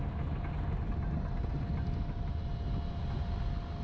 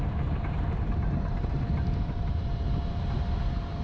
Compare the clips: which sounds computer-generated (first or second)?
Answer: second